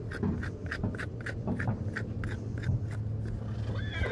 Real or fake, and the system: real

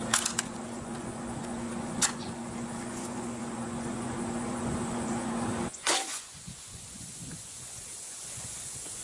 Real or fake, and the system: fake, vocoder, Vocos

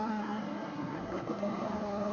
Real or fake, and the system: fake, codec, SNAC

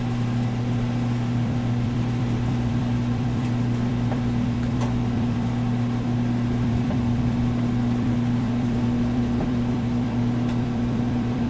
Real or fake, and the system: fake, vocoder, BigVGAN v2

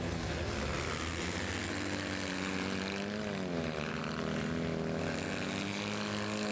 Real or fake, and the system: real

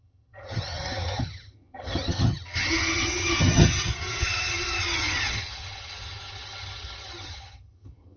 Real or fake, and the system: fake, vocoder, HiFi-GAN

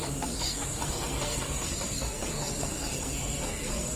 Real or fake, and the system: fake, codec, SNAC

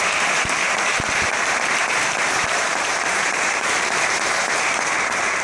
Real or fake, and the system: fake, vocoder, BigVGAN v2